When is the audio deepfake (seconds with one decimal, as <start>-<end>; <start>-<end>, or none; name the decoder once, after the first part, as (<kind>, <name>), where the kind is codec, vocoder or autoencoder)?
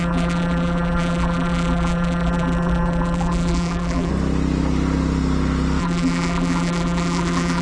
0.0-4.1 (vocoder, BigVGAN v2); 5.8-7.6